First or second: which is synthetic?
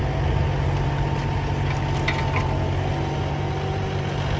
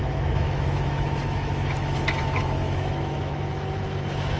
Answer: second